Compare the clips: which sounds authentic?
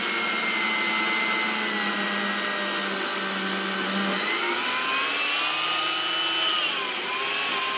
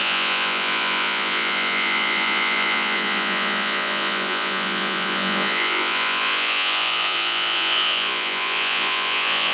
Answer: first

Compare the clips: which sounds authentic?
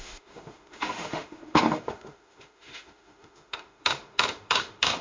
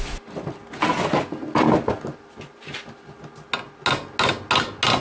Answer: second